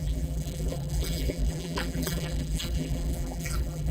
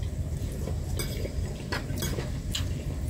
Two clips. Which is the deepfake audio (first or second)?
first